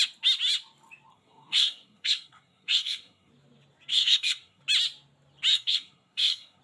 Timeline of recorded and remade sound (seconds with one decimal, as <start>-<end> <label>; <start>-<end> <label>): 0.0-1.1 recorded; 1.1-3.3 remade; 3.3-3.9 recorded; 3.9-4.6 remade; 4.6-5.5 recorded; 5.5-6.6 remade